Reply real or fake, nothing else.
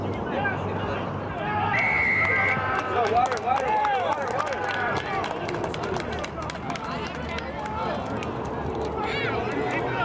real